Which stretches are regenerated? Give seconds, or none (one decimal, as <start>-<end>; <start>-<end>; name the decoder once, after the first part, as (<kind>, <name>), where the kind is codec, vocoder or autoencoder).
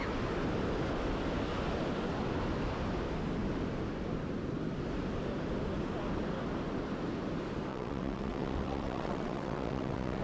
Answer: 7.7-10.2 (vocoder, WaveNeXt)